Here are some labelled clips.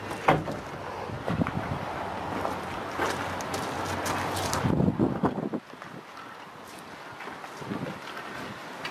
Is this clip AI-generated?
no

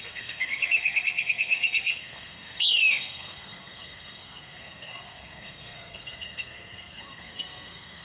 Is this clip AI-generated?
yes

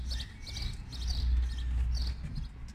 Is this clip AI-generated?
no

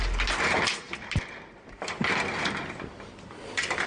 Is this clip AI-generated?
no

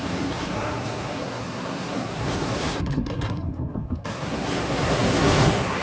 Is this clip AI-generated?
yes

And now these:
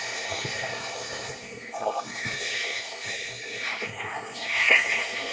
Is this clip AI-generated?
yes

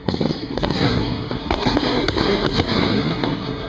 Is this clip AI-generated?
yes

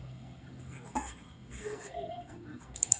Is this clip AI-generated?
yes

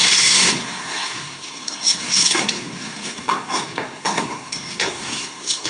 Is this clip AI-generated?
yes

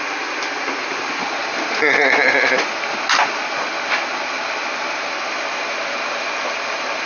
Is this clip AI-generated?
no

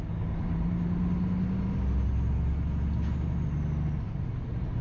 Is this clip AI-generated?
no